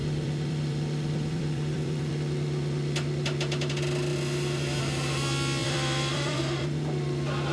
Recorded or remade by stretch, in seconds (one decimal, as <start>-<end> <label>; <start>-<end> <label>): 0.0-2.1 remade; 2.1-5.6 recorded; 5.6-6.6 remade; 6.6-7.5 recorded